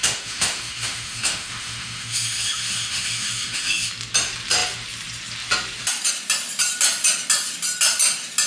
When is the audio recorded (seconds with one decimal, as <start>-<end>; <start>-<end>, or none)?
3.9-8.5